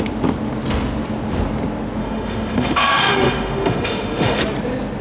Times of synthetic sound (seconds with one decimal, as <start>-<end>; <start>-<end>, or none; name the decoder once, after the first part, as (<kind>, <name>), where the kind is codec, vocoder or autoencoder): 2.0-4.4 (autoencoder, DAC-VAE)